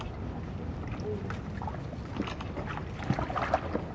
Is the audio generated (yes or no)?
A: no